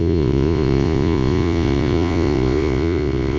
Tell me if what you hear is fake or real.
fake